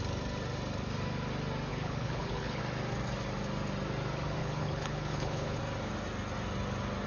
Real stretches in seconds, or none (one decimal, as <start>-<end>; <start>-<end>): 0.0-1.7; 2.6-4.4; 5.6-7.1